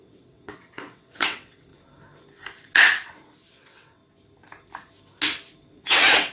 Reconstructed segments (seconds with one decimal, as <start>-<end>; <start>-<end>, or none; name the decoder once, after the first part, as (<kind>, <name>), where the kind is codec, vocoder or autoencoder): 0.0-1.7 (vocoder, WaveNeXt); 3.5-4.0; 5.8-6.3